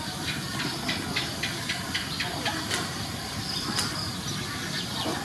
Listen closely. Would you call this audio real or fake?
real